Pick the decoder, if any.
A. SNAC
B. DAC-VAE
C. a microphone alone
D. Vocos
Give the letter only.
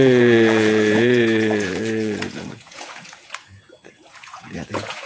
D